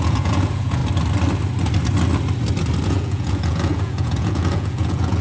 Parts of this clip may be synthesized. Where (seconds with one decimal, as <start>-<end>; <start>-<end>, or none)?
0.0-0.8; 2.9-5.2

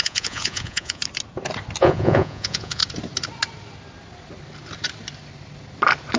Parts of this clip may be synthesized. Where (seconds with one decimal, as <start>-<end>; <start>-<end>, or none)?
0.0-1.0; 1.8-2.8

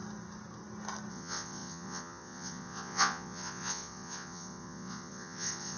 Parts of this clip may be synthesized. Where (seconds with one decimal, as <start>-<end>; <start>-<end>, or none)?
1.1-5.8

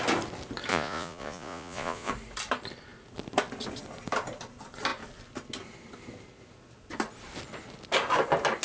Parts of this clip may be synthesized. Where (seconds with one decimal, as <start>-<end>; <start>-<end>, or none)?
0.7-2.1

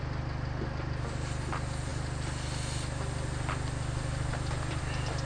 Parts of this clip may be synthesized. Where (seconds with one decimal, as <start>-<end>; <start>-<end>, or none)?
none

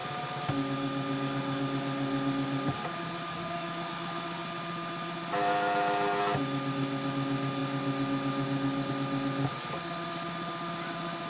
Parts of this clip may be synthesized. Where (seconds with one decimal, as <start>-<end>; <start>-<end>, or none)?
none